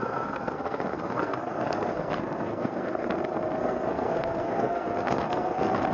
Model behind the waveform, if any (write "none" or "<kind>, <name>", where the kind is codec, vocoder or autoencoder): codec, SNAC